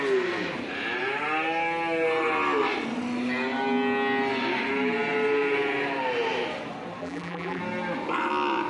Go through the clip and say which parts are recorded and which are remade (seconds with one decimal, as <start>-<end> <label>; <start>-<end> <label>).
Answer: 0.0-7.0 recorded; 7.0-7.6 remade; 7.6-8.7 recorded